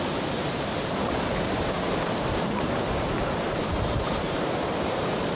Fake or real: fake